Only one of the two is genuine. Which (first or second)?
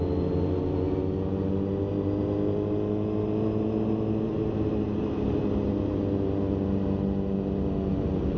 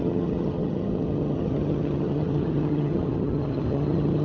first